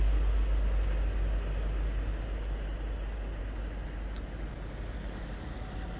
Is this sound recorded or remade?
recorded